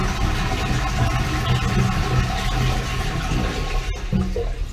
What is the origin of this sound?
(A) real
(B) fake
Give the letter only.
A